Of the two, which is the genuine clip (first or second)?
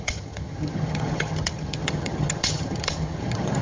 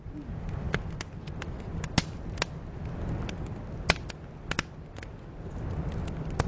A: second